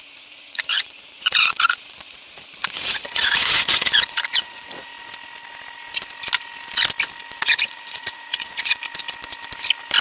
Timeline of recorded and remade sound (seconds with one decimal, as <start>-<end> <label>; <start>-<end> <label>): 0.0-4.9 remade; 4.9-7.4 recorded; 7.4-8.8 remade; 8.8-10.0 recorded